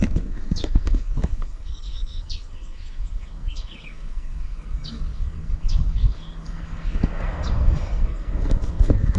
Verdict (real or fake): fake